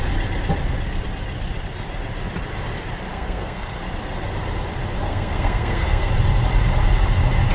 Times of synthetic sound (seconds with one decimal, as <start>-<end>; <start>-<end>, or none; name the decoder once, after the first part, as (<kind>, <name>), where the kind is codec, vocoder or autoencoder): 3.1-3.8 (codec, SNAC); 5.1-6.1